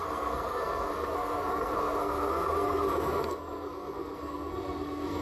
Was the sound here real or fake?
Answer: fake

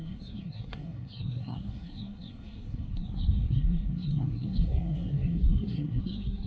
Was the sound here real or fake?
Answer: fake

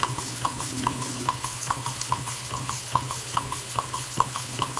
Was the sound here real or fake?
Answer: fake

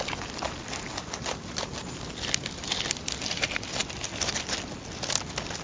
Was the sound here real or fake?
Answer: real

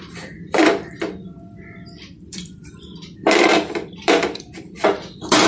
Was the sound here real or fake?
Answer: fake